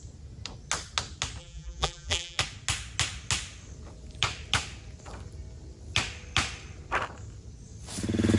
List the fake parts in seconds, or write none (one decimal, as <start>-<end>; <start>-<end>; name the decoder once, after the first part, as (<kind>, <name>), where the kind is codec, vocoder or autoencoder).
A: 1.4-2.4 (vocoder, BigVGAN v2)